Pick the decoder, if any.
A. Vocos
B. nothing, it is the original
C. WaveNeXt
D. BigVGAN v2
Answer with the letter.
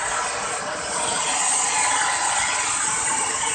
B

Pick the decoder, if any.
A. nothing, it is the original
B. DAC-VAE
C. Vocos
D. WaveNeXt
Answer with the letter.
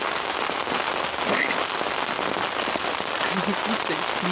A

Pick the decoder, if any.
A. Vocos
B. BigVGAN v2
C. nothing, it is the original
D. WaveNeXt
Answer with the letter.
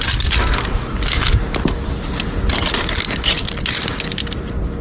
C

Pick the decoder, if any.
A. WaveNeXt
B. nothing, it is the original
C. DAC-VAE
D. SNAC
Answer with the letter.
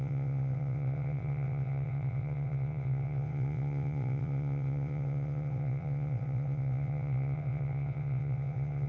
A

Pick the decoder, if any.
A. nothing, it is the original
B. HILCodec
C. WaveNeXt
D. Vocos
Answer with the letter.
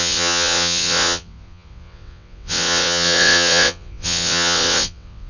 C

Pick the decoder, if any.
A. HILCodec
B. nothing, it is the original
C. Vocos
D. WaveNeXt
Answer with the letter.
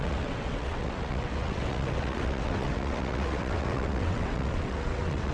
D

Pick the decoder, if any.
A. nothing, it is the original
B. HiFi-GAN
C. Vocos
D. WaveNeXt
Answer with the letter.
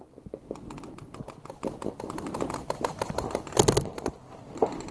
A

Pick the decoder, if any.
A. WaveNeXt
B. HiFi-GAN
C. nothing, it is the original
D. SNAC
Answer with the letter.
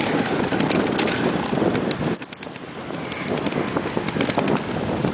C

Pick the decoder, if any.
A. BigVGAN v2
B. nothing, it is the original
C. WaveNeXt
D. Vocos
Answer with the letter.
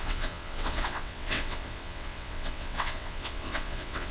C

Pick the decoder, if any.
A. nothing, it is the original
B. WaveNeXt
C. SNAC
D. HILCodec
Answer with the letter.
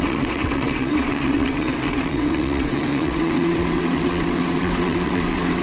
B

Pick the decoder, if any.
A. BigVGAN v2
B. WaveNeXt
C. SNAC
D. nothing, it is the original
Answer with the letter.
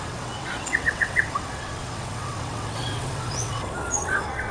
B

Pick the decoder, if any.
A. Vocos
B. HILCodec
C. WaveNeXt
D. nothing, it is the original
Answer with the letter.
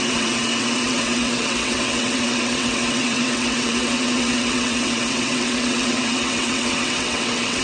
C